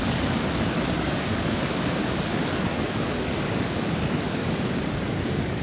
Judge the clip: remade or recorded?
remade